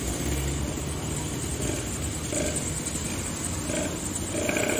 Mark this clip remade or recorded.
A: recorded